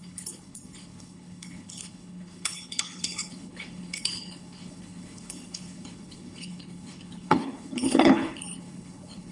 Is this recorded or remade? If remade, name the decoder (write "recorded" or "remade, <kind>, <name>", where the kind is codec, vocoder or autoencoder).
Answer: remade, codec, HILCodec